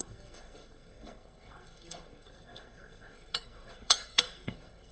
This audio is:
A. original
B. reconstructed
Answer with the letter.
B